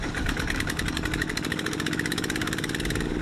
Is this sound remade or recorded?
remade